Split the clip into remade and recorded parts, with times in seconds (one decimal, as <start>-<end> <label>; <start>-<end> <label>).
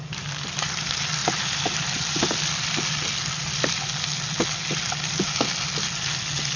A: 0.0-1.2 recorded; 1.2-5.2 remade; 5.2-6.6 recorded